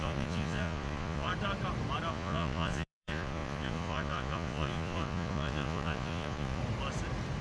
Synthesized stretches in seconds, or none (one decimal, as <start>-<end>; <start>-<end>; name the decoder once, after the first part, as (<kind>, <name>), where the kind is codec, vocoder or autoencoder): 0.0-1.3 (vocoder, Vocos); 2.1-6.6

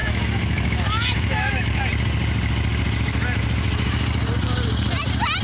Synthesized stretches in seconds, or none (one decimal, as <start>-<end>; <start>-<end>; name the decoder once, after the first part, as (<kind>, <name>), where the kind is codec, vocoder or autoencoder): 0.0-1.8 (autoencoder, DAC-VAE)

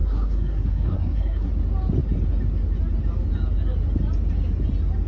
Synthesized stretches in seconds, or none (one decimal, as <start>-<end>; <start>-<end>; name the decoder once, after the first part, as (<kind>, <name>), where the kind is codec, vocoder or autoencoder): 0.0-1.5 (codec, SNAC)

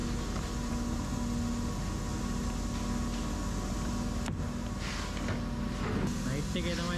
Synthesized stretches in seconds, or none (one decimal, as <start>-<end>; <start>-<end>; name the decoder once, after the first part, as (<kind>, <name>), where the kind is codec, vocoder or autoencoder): none